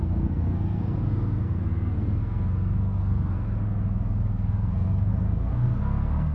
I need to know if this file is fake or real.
fake